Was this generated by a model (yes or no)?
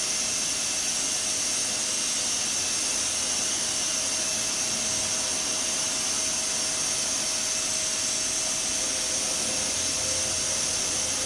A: no